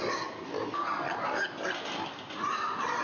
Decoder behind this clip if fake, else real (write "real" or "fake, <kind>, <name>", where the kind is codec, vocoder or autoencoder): real